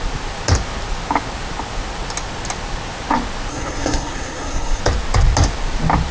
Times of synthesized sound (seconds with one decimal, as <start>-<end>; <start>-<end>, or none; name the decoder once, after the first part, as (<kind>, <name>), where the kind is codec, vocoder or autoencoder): 3.5-4.8 (codec, SNAC)